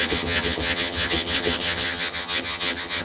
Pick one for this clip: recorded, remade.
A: remade